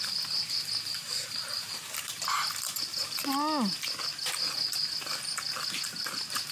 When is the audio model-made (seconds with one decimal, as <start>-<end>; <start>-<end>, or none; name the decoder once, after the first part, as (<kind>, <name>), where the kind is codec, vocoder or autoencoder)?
1.0-2.2 (vocoder, BigVGAN v2)